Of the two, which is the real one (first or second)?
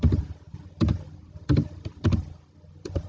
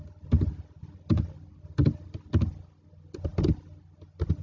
second